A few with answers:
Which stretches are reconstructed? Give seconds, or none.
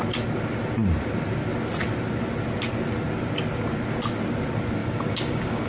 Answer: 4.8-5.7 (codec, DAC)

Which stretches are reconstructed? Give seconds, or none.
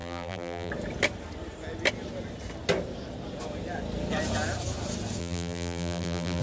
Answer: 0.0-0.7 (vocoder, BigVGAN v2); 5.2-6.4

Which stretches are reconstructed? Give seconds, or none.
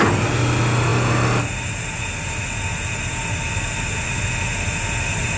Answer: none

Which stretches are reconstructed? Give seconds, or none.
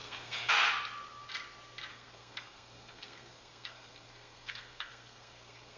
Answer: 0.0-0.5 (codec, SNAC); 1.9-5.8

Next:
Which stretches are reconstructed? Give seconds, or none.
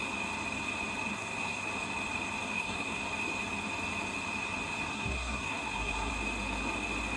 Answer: 1.1-1.7 (codec, SNAC); 2.5-3.0; 4.9-6.1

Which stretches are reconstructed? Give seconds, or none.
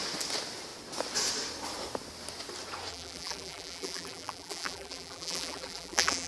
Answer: 2.9-6.3 (vocoder, BigVGAN v2)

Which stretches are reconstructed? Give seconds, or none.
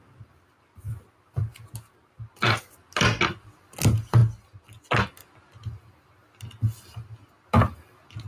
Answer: none